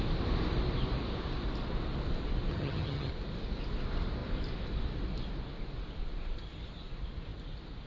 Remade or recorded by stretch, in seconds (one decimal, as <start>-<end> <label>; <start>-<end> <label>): 0.0-2.5 recorded; 2.5-3.1 remade; 3.1-7.9 recorded